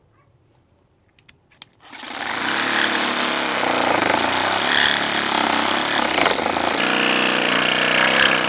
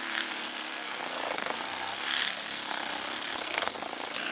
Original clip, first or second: first